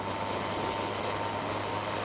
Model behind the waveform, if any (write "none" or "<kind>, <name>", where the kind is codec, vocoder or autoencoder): none